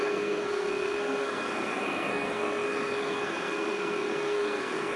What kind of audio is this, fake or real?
fake